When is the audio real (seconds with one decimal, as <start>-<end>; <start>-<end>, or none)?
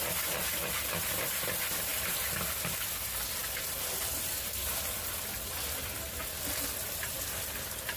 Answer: 0.0-1.9; 2.5-8.0